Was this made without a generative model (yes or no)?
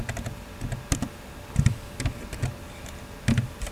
yes